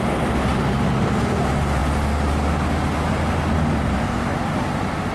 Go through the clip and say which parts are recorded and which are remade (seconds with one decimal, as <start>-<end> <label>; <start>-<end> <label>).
0.0-0.5 recorded; 0.5-1.0 remade; 1.0-4.3 recorded; 4.3-5.1 remade